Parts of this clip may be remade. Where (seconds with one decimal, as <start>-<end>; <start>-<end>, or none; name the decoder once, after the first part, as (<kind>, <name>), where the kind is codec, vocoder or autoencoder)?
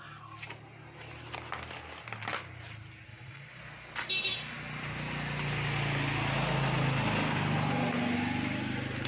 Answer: 3.1-3.6 (codec, DAC)